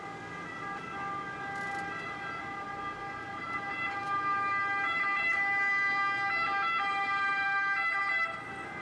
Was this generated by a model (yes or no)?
no